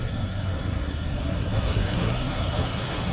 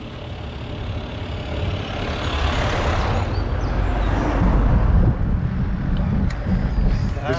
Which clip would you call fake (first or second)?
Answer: first